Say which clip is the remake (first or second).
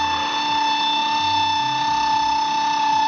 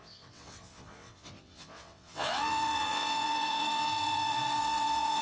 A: second